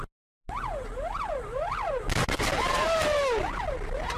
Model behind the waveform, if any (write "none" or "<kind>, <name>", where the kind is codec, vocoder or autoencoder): none